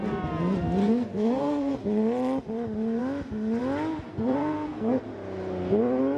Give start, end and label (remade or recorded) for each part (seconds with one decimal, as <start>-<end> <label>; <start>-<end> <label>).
0.0-0.8 recorded; 0.8-1.7 remade; 1.7-4.1 recorded; 4.1-5.0 remade; 5.0-6.2 recorded